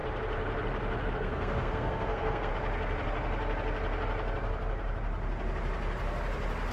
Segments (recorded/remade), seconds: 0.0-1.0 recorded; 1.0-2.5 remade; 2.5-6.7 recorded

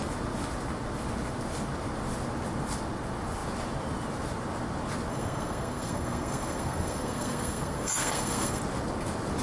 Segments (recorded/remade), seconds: 0.0-5.1 recorded; 5.1-8.6 remade; 8.6-9.4 recorded

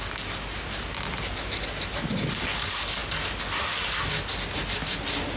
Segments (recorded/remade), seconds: 0.0-5.4 recorded

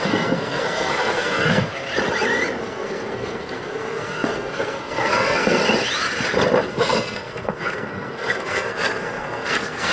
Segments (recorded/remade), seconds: 0.0-1.7 remade; 1.7-2.6 recorded; 2.6-5.6 remade; 5.6-6.7 recorded; 6.7-9.9 remade

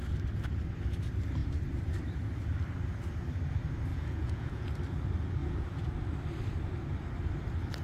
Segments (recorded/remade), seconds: 0.0-3.9 recorded; 3.9-4.8 remade; 4.8-5.4 recorded; 5.4-5.9 remade; 5.9-7.8 recorded

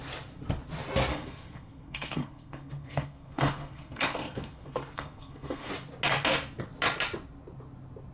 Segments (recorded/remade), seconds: 0.0-1.1 recorded; 1.1-5.7 remade; 5.7-8.1 recorded

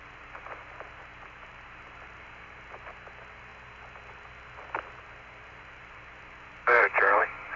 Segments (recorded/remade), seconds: 0.0-3.5 remade; 3.5-5.0 recorded; 5.0-7.6 remade